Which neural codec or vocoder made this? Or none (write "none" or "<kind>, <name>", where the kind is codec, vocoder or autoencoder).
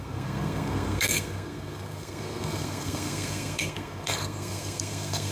codec, SNAC